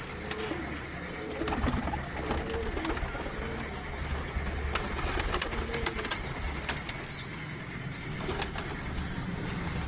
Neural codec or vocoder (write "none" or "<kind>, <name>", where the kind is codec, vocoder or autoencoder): none